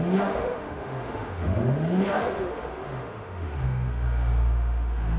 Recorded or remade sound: remade